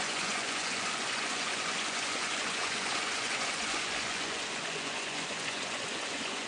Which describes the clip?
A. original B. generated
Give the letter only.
B